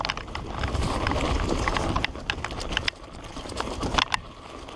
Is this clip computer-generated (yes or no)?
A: no